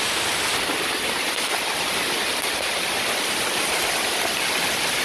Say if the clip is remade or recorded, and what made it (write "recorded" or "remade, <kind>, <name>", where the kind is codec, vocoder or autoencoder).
recorded